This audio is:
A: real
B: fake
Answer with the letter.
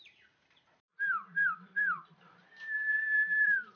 B